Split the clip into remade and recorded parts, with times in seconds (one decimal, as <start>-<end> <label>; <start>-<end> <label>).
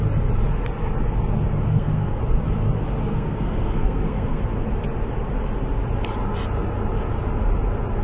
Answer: 0.0-1.7 recorded; 1.7-2.2 remade; 2.2-3.0 recorded; 3.0-4.4 remade; 4.4-8.0 recorded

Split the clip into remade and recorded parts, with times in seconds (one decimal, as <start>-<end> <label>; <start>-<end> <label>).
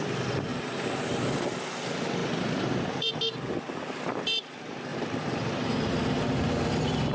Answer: 0.0-0.5 recorded; 0.5-1.5 remade; 1.5-2.2 recorded; 2.2-3.1 remade; 3.1-4.9 recorded; 4.9-7.1 remade